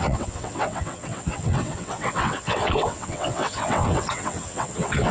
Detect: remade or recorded remade